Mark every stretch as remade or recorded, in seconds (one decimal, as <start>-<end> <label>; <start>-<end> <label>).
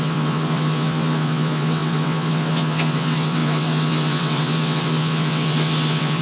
0.0-6.2 remade